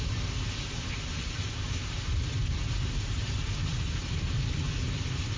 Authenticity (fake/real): real